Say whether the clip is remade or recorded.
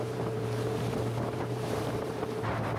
remade